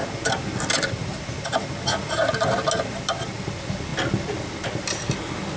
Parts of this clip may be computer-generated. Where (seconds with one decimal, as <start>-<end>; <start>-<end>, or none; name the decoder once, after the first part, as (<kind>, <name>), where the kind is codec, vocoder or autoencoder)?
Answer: none